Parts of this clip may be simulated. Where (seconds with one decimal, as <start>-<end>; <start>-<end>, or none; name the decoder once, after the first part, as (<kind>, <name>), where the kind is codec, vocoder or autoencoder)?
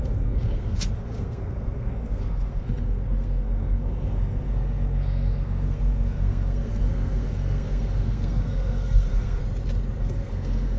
0.0-9.4 (codec, SNAC); 10.0-10.8